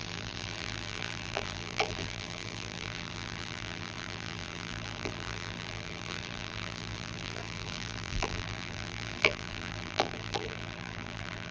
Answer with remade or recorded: remade